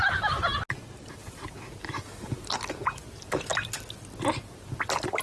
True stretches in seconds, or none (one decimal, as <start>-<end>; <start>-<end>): 0.0-5.2